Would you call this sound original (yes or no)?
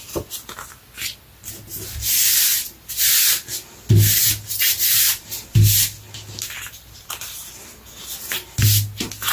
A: yes